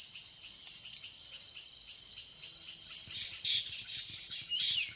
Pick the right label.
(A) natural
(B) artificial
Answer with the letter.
A